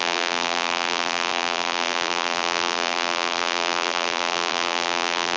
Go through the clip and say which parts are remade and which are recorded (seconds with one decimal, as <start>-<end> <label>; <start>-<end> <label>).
0.0-5.4 remade